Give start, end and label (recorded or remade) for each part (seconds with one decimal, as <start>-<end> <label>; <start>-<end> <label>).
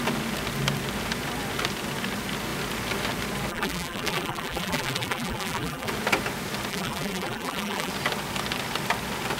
0.0-3.5 recorded; 3.5-5.9 remade; 5.9-6.7 recorded; 6.7-7.9 remade; 7.9-9.4 recorded